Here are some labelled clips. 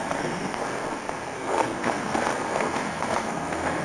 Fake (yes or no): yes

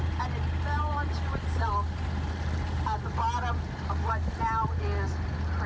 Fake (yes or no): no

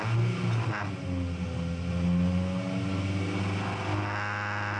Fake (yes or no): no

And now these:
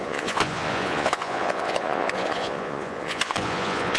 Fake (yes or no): yes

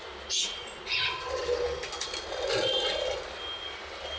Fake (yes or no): no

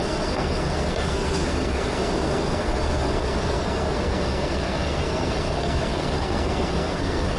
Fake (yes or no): yes